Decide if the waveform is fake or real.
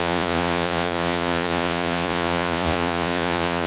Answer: fake